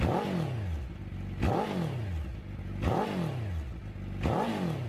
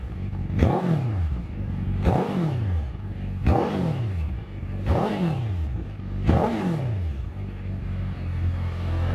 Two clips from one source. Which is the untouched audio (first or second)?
first